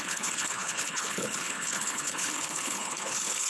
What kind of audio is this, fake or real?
fake